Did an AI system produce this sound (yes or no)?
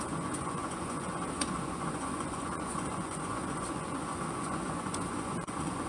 yes